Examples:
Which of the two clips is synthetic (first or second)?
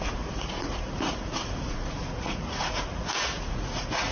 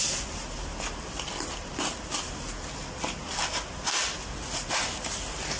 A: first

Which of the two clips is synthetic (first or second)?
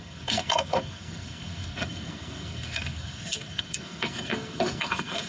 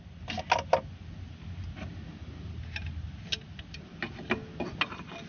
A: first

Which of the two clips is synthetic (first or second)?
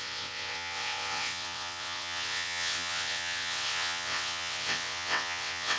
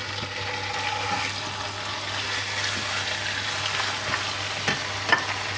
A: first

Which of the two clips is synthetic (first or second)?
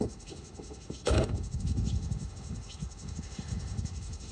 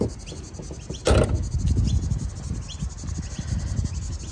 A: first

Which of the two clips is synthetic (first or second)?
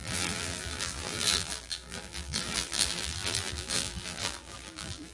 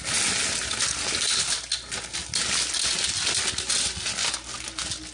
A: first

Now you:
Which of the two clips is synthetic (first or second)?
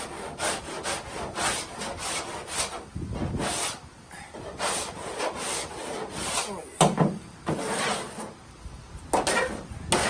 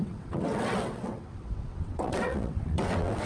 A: second